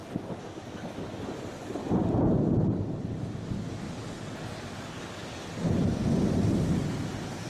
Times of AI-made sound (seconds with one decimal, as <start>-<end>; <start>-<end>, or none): none